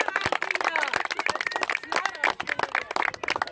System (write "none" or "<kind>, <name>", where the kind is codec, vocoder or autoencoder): none